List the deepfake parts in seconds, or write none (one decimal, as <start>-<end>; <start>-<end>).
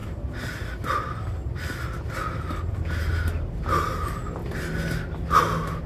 none